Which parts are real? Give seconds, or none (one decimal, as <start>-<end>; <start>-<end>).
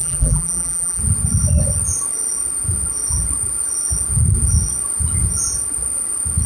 1.0-6.5